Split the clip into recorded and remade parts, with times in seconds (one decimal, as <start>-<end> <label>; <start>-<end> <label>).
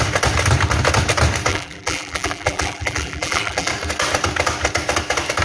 0.0-1.5 recorded; 1.5-3.7 remade; 3.7-5.4 recorded